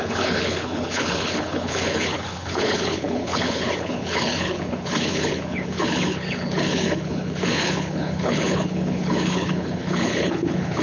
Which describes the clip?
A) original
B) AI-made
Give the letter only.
B